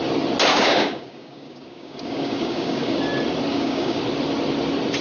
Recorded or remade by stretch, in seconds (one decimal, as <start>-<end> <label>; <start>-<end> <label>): 0.0-0.5 recorded; 0.5-3.0 remade; 3.0-3.5 recorded; 3.5-4.0 remade; 4.0-5.0 recorded